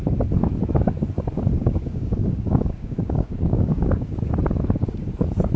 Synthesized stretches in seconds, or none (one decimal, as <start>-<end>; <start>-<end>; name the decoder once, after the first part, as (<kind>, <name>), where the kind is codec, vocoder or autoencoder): 1.6-4.3 (codec, DAC)